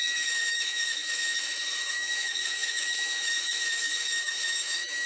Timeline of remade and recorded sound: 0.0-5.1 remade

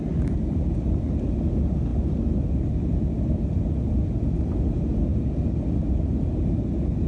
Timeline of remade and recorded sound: 0.0-7.1 recorded

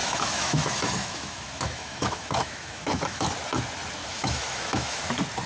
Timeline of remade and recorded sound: 0.0-3.3 remade; 3.3-4.0 recorded; 4.0-5.0 remade; 5.0-5.5 recorded

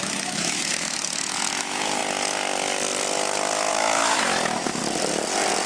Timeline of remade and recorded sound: 0.0-2.0 remade; 2.0-3.7 recorded; 3.7-4.8 remade; 4.8-5.7 recorded

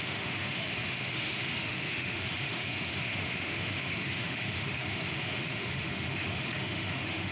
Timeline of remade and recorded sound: 0.0-7.3 remade